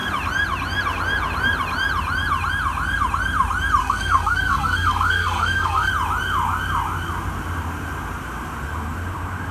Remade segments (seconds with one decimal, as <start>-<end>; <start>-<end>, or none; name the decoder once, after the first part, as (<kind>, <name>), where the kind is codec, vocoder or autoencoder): 3.8-5.9 (codec, SNAC)